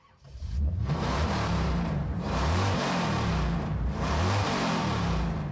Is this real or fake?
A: fake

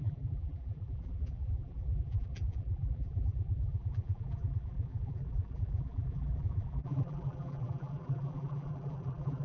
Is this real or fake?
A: fake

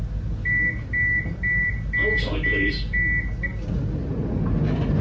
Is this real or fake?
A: real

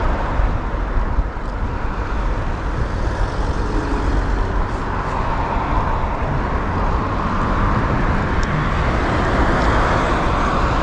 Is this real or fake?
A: real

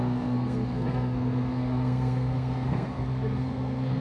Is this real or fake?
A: fake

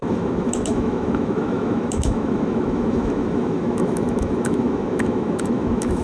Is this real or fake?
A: fake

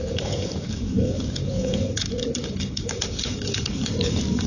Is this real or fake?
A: fake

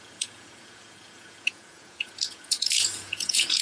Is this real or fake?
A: fake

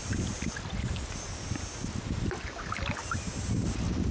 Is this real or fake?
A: real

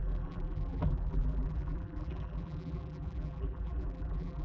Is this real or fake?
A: fake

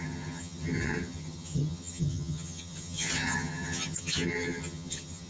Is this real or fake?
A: fake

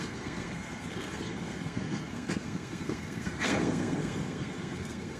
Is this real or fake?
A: fake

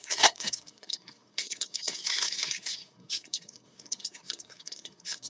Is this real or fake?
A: fake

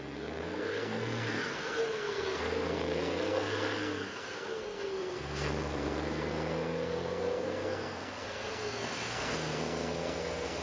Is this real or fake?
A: fake